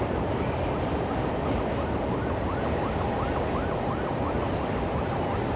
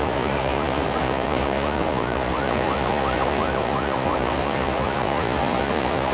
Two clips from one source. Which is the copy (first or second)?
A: second